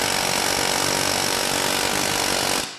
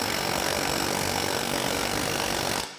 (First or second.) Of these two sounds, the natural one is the first